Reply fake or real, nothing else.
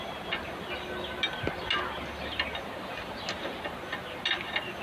real